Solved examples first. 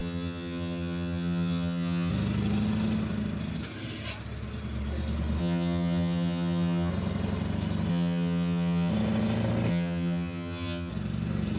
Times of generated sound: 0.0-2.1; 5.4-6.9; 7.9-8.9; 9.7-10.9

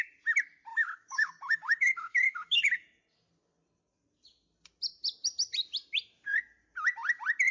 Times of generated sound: 0.7-3.0

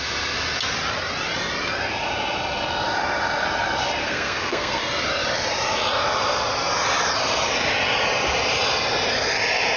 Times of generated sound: 4.0-4.8